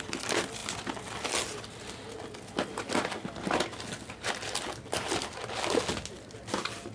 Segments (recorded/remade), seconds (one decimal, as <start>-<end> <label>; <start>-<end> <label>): 0.0-6.9 recorded